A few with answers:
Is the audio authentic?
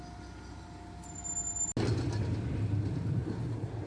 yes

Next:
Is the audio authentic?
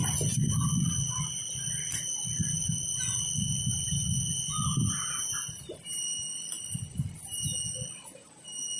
yes